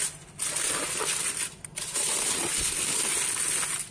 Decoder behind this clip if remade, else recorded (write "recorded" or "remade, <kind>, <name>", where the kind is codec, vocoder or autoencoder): recorded